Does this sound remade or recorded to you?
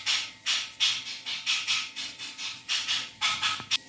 recorded